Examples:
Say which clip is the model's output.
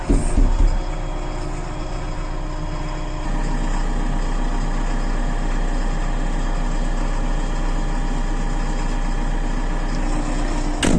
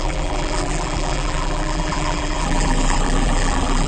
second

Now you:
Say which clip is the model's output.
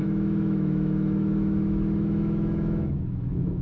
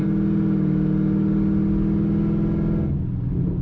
first